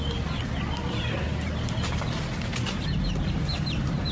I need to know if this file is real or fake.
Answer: real